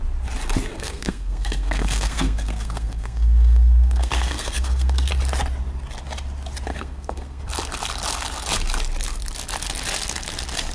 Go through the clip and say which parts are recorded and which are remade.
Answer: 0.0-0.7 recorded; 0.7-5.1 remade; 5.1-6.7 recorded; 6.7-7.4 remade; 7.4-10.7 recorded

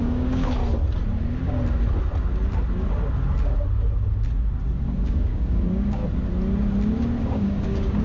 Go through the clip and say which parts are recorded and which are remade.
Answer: 0.0-0.6 remade; 0.6-4.8 recorded; 4.8-6.0 remade; 6.0-7.2 recorded; 7.2-8.0 remade

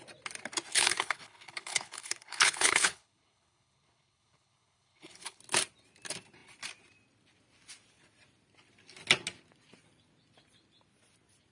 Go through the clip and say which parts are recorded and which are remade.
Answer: 0.0-0.7 recorded; 0.7-5.4 remade; 5.4-11.5 recorded

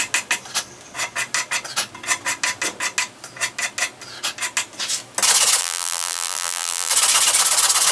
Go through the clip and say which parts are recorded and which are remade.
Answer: 0.0-5.6 recorded; 5.6-6.9 remade; 6.9-7.9 recorded